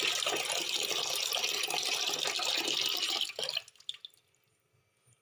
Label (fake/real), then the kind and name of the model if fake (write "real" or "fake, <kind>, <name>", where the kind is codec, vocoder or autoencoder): real